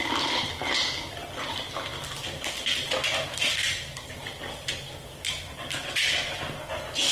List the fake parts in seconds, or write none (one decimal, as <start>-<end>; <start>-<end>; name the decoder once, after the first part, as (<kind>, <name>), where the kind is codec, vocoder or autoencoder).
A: none